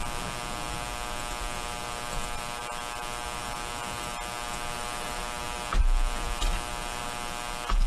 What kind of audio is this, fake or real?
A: real